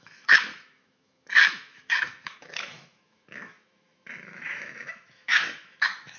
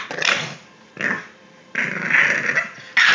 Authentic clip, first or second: second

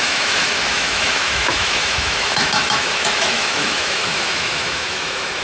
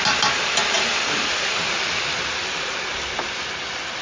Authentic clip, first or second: second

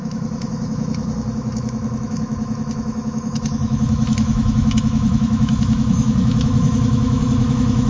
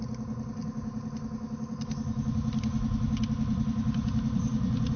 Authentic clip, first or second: second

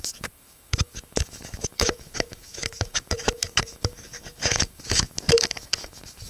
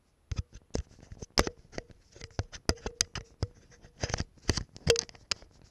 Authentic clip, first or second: second